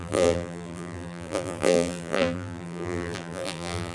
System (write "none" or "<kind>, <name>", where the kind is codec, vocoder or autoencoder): vocoder, BigVGAN v2